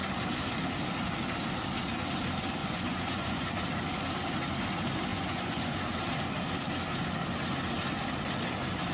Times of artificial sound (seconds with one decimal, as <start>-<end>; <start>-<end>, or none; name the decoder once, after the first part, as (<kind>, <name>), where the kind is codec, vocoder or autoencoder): 2.6-3.5 (vocoder, Vocos); 5.1-5.8